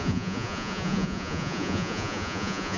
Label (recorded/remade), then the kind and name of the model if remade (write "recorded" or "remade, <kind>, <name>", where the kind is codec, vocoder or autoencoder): remade, vocoder, Vocos